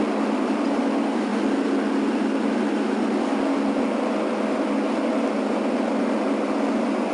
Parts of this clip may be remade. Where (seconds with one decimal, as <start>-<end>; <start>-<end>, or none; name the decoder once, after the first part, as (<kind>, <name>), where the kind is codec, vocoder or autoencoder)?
none